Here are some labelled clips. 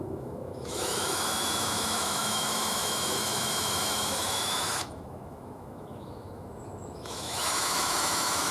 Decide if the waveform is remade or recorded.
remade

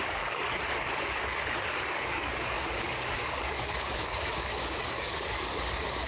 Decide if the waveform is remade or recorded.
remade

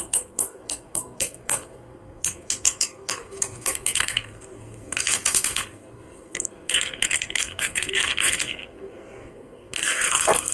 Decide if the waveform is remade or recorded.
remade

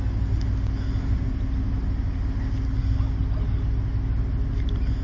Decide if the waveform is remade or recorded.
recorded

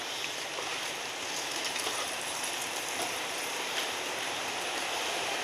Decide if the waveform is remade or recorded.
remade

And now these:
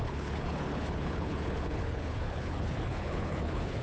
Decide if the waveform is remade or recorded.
remade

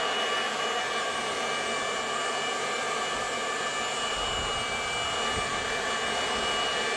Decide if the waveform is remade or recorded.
recorded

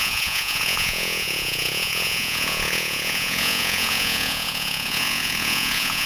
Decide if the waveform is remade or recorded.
remade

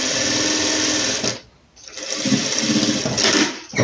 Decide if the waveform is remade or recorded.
recorded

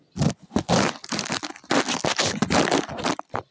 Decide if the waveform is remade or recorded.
recorded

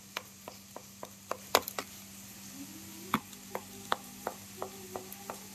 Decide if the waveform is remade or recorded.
recorded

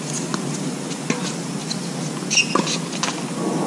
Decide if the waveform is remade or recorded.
recorded